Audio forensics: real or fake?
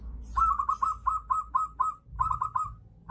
real